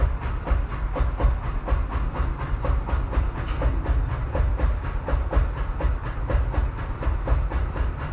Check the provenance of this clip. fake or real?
real